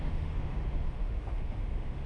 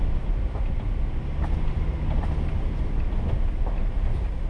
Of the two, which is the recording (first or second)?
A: second